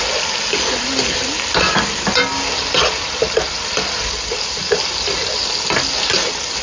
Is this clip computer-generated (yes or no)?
no